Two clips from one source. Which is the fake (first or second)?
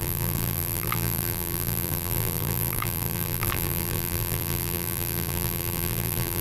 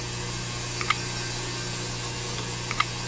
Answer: first